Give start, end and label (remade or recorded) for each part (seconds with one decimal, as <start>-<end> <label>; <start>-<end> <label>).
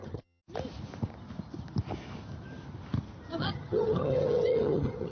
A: 0.0-0.4 remade; 0.4-3.4 recorded; 3.4-5.1 remade